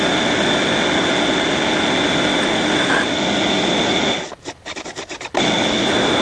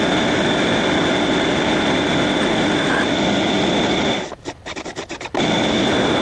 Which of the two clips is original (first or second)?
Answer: first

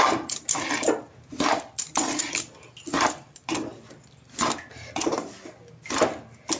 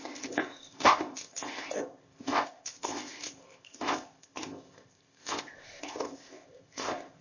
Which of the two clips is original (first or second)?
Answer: first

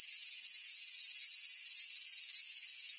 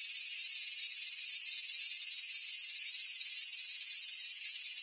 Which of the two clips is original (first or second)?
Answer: first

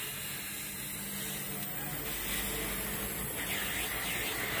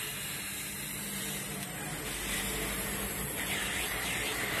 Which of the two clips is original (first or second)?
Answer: first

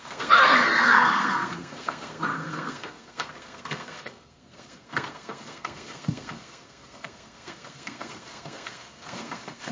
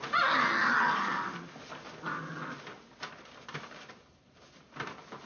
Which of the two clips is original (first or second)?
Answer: second